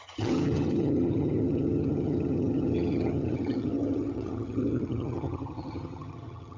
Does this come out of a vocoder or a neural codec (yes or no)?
yes